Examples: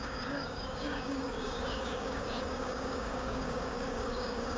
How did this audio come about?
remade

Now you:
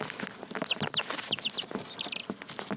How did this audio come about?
recorded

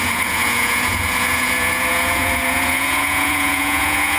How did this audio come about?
remade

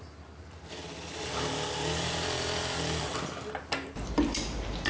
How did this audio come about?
recorded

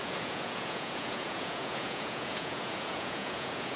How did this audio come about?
remade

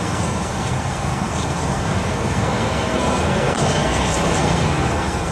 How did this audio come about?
remade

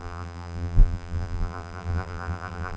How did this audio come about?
remade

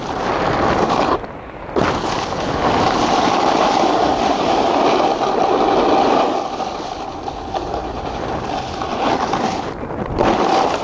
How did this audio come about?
recorded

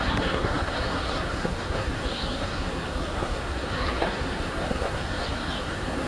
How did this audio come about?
remade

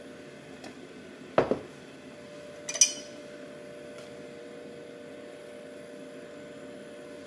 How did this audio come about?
recorded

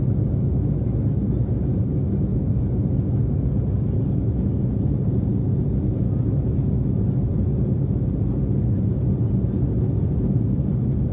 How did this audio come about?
recorded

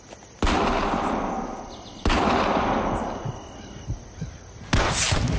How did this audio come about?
recorded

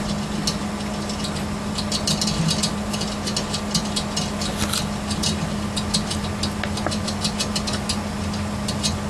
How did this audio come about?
recorded